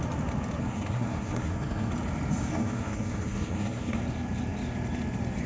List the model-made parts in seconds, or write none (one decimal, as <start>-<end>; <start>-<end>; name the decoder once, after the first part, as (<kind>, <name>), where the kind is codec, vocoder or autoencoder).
0.6-1.9 (codec, SNAC); 2.5-4.0